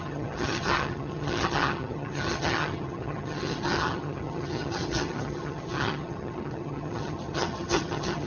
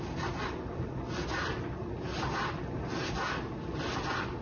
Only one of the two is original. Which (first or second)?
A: second